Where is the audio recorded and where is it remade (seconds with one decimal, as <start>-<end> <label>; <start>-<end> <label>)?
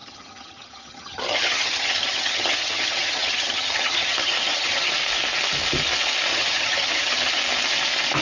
0.0-4.9 remade; 4.9-6.3 recorded; 6.3-7.4 remade; 7.4-8.2 recorded